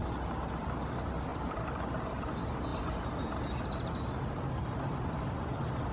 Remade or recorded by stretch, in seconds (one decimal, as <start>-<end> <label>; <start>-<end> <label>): 0.0-1.3 recorded; 1.3-2.0 remade; 2.0-5.9 recorded

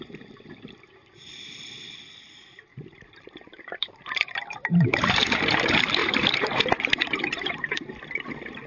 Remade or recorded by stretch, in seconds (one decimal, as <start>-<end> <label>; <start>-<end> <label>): 0.0-2.7 recorded; 2.7-5.6 remade; 5.6-6.0 recorded; 6.0-7.9 remade; 7.9-8.7 recorded

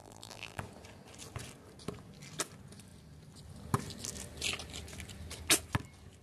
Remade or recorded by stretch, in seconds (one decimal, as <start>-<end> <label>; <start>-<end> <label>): 0.0-0.6 remade; 0.6-6.2 recorded

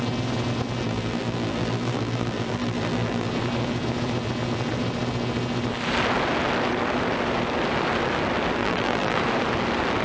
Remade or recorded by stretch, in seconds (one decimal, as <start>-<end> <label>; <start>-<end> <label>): 0.0-0.8 recorded; 0.8-3.3 remade; 3.3-8.6 recorded; 8.6-9.2 remade; 9.2-10.0 recorded

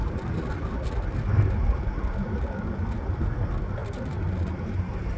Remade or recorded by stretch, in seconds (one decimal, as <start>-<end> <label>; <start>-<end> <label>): 0.0-5.2 recorded

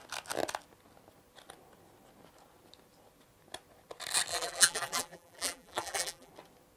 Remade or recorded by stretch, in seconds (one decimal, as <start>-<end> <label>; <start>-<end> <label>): 0.0-4.3 recorded; 4.3-6.3 remade; 6.3-6.8 recorded